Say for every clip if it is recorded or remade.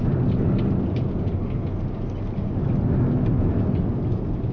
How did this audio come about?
recorded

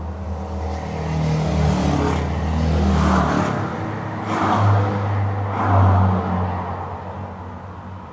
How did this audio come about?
recorded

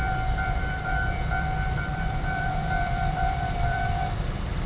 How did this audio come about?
remade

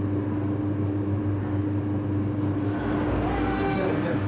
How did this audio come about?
recorded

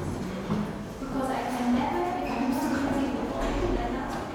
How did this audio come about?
recorded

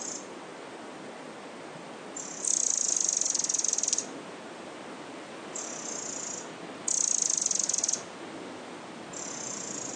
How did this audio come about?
recorded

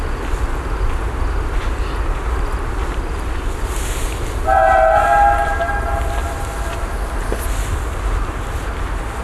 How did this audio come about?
recorded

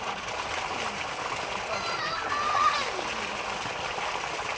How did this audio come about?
recorded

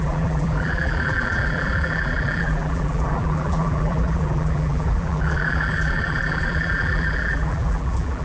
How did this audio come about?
remade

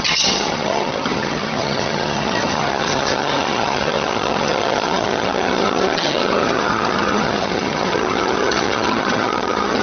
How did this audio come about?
remade